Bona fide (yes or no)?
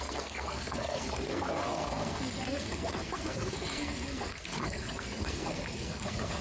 no